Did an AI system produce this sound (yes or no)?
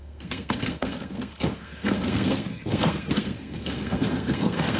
yes